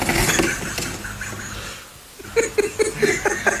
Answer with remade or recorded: recorded